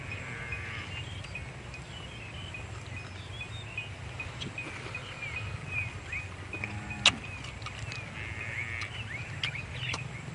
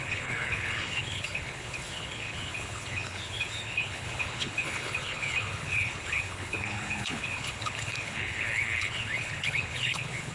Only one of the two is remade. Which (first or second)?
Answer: second